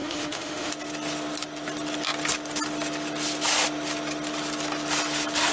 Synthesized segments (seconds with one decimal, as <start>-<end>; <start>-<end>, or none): 0.0-0.7